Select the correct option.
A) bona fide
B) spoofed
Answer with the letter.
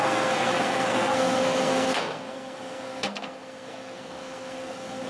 B